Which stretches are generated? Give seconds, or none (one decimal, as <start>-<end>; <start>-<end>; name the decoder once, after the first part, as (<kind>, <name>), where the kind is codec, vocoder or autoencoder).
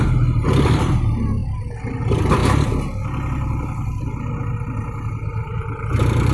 0.0-1.4 (vocoder, BigVGAN v2); 2.0-2.4; 4.8-6.3